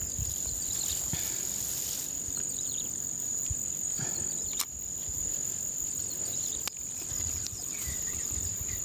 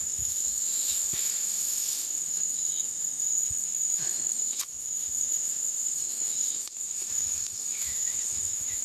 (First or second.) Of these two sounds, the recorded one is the first